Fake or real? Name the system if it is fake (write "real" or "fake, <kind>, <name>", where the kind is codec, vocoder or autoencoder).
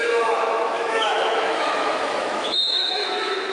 fake, autoencoder, DAC-VAE